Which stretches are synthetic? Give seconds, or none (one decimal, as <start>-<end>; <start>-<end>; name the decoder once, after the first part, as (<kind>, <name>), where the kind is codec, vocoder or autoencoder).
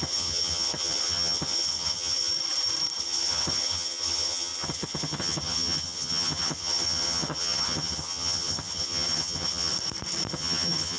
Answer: 0.0-2.3 (vocoder, HiFi-GAN); 3.0-9.7; 10.3-11.0